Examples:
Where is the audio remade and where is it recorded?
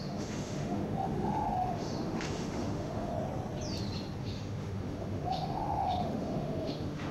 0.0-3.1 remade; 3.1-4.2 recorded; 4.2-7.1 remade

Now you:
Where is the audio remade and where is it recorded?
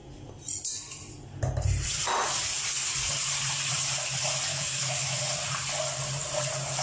0.0-4.5 recorded; 4.5-5.2 remade; 5.2-6.8 recorded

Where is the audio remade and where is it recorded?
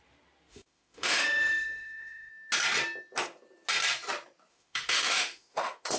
0.0-0.5 recorded; 0.5-2.3 remade; 2.3-4.5 recorded; 4.5-6.0 remade